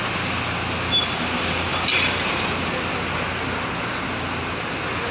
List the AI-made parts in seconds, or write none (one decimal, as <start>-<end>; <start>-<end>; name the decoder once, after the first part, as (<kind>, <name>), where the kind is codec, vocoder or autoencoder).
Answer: none